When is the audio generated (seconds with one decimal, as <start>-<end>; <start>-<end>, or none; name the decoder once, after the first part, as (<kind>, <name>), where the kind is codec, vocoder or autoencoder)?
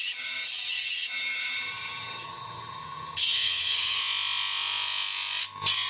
0.0-4.0 (vocoder, HiFi-GAN)